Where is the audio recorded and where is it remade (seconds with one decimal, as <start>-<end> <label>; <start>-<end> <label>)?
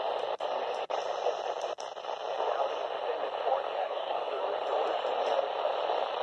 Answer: 0.0-3.8 recorded; 3.8-4.4 remade; 4.4-6.2 recorded